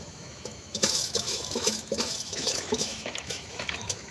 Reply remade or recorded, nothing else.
remade